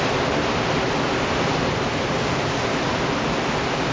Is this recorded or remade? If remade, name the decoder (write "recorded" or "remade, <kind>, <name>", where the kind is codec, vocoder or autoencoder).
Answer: recorded